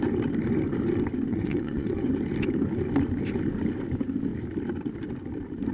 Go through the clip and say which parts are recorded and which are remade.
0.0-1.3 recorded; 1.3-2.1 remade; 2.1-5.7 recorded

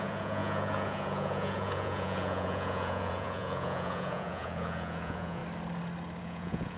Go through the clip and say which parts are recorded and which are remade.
0.0-5.4 remade; 5.4-6.2 recorded; 6.2-6.8 remade